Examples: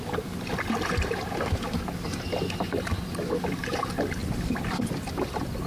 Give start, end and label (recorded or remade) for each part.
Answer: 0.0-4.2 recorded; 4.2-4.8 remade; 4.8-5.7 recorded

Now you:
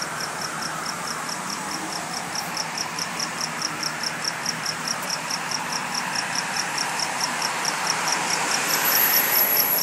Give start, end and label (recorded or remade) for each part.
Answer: 0.0-5.8 remade; 5.8-6.3 recorded; 6.3-8.1 remade; 8.1-8.6 recorded; 8.6-9.8 remade

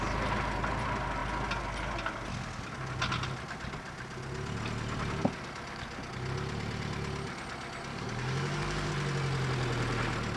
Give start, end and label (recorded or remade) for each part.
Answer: 0.0-7.9 recorded; 7.9-8.9 remade; 8.9-10.4 recorded

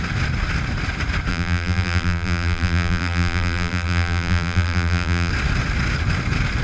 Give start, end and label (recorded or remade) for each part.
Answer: 0.0-1.3 recorded; 1.3-5.3 remade; 5.3-6.6 recorded